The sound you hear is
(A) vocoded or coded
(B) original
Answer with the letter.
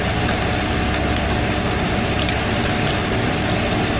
B